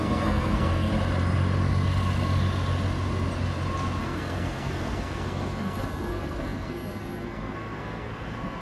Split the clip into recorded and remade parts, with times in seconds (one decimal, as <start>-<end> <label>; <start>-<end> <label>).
0.0-0.9 remade; 0.9-4.0 recorded; 4.0-8.6 remade